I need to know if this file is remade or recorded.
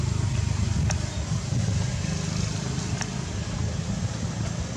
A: recorded